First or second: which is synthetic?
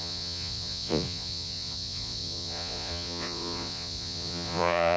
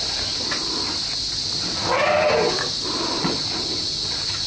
first